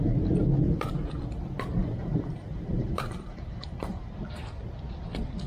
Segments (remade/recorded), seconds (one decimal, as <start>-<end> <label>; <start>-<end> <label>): 0.0-1.8 recorded; 1.8-4.1 remade; 4.1-5.5 recorded